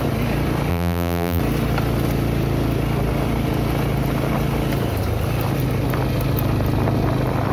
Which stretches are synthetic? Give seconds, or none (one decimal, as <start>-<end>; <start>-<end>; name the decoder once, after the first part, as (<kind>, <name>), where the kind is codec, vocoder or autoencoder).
0.7-1.4 (vocoder, BigVGAN v2)